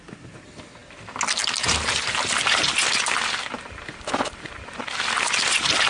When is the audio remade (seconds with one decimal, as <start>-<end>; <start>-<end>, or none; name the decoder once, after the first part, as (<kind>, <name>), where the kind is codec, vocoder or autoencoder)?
none